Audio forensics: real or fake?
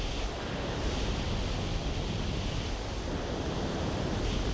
real